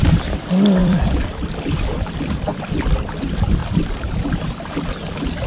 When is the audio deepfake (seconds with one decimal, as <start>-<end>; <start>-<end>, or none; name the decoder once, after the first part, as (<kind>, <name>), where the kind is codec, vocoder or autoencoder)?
0.8-1.5 (vocoder, BigVGAN v2); 3.6-4.9